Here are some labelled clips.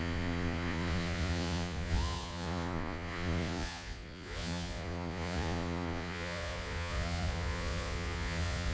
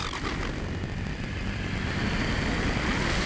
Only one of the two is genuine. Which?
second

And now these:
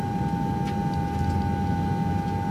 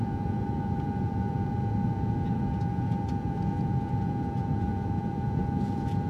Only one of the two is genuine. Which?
first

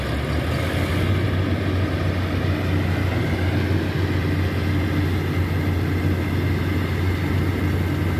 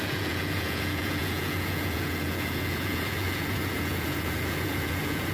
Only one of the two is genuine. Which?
first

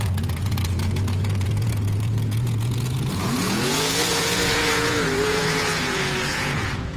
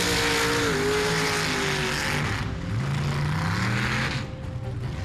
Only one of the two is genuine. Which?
second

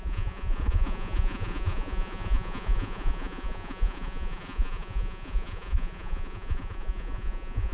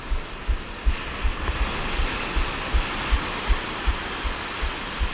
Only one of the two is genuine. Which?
second